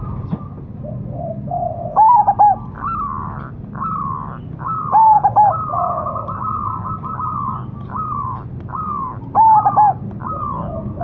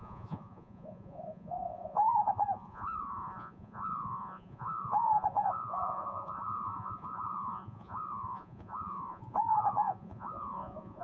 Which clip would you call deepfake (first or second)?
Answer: second